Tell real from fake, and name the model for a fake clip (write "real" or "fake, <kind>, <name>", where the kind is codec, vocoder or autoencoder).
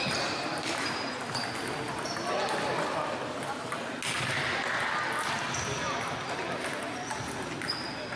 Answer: real